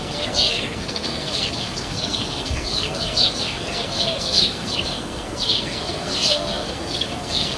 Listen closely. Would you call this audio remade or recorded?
remade